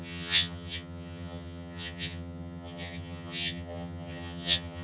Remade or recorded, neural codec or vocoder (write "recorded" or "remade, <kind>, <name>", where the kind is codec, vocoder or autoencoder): remade, vocoder, HiFi-GAN